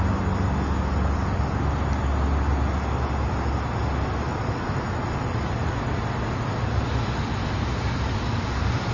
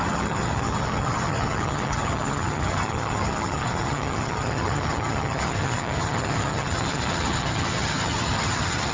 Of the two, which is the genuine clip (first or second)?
first